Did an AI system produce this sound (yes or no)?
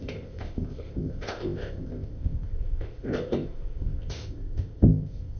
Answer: yes